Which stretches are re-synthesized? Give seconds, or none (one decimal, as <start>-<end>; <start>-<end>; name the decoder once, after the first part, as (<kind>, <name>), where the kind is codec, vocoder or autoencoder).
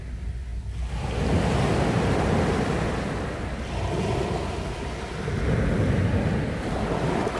none